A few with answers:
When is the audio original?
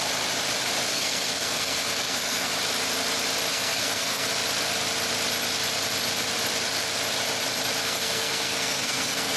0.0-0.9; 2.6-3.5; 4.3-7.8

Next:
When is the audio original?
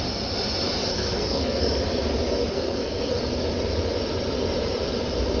0.0-0.9; 1.6-2.4; 3.2-5.4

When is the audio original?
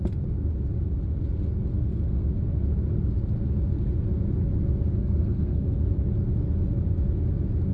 0.0-1.7; 2.3-5.0; 5.8-7.7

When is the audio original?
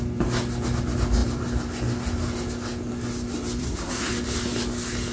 0.0-3.6; 4.1-5.1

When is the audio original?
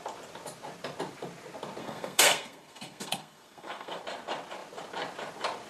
0.0-1.8; 4.0-5.7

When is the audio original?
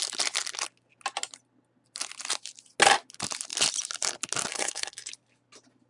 0.0-4.5; 5.1-5.9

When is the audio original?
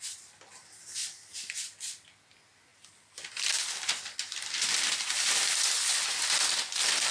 0.0-7.1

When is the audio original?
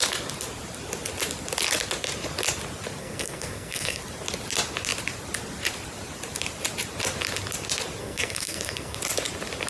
0.0-3.0; 4.0-8.0; 9.0-9.7